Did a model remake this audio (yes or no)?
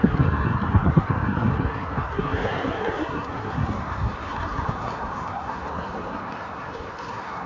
yes